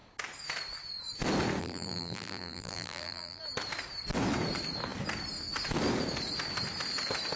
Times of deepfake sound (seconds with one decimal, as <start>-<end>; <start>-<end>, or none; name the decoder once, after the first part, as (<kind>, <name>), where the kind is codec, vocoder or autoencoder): 1.6-3.4 (vocoder, BigVGAN v2)